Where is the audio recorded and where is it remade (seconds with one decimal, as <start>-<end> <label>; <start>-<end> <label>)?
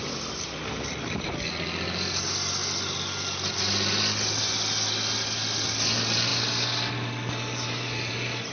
0.0-8.5 recorded